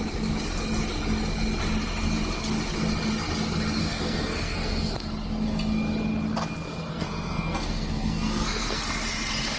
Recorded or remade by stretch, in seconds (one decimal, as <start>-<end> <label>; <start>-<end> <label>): 0.0-3.8 recorded; 3.8-4.9 remade; 4.9-6.9 recorded; 6.9-8.8 remade; 8.8-9.6 recorded